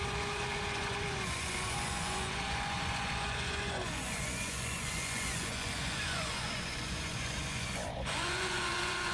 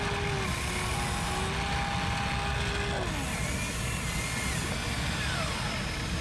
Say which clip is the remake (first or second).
first